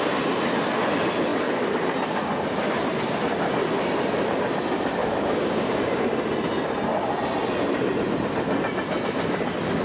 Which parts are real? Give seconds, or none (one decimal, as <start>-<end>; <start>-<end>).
0.0-5.0; 5.7-9.8